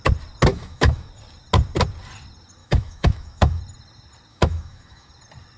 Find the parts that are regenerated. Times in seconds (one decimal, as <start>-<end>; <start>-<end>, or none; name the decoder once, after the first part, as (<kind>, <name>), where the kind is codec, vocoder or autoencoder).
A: 0.5-1.1 (autoencoder, DAC-VAE); 2.6-3.6; 4.3-5.1